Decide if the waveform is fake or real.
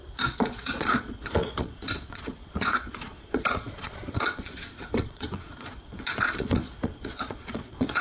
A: fake